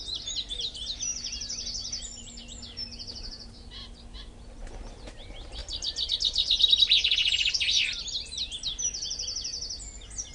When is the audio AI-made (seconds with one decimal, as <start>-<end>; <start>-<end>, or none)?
5.6-6.1; 7.2-8.0